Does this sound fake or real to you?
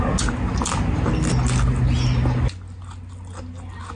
real